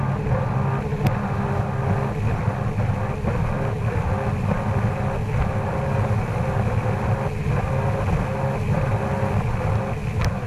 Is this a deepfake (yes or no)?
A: no